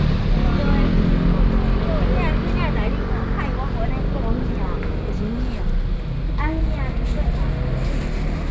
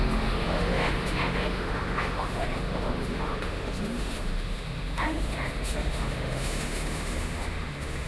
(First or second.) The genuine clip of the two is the first